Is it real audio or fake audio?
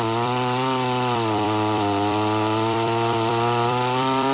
fake